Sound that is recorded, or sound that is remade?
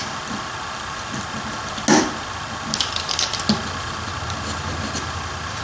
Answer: recorded